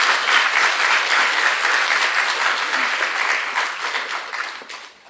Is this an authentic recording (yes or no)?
yes